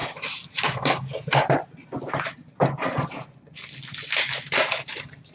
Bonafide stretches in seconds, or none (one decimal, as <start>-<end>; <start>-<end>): 3.1-5.3